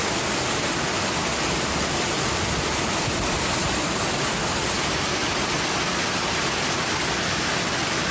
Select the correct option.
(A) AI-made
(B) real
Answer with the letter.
B